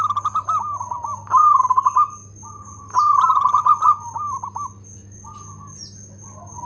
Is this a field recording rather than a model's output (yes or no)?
yes